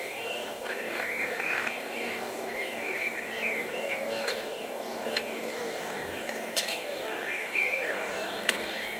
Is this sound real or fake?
fake